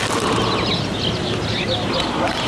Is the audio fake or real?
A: real